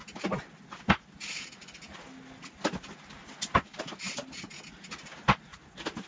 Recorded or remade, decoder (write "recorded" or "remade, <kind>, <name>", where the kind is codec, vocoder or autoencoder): recorded